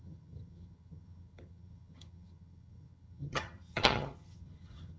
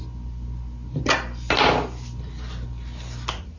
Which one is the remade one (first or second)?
first